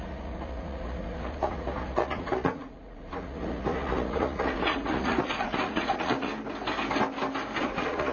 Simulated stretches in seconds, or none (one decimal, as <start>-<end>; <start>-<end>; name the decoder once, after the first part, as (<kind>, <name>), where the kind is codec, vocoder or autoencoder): 0.0-6.3 (vocoder, Vocos); 7.6-8.1